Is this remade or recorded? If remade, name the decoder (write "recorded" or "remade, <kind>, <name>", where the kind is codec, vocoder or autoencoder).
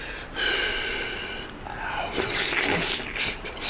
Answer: recorded